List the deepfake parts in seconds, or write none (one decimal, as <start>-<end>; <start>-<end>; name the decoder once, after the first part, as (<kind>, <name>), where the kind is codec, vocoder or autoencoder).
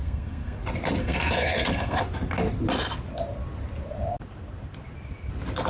0.0-0.6 (codec, SNAC); 1.0-2.0